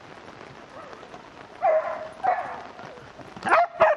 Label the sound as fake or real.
real